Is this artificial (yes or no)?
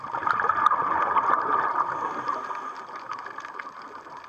no